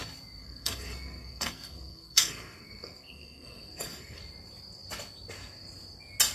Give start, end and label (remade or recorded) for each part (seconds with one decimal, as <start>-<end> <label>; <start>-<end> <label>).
0.0-0.4 recorded; 0.4-4.2 remade; 4.2-6.3 recorded